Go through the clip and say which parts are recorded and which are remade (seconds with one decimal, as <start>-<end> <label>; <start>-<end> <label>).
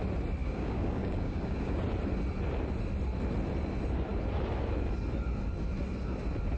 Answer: 0.0-0.4 recorded; 0.4-1.8 remade; 1.8-6.6 recorded